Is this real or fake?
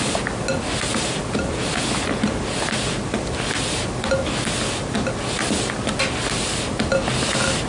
real